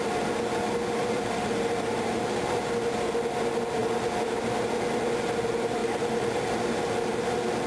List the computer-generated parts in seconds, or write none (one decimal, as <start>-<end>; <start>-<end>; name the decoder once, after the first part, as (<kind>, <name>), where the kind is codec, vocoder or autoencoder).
1.0-2.6 (vocoder, BigVGAN v2); 5.8-6.9